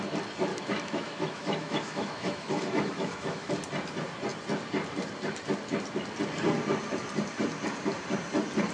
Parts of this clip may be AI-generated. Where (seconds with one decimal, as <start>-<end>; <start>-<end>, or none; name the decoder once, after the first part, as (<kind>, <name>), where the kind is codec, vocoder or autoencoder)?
0.5-3.5 (autoencoder, DAC-VAE)